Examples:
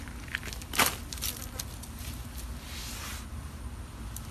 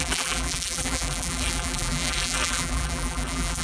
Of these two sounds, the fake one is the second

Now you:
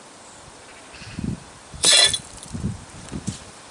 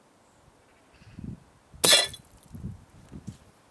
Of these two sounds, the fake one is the first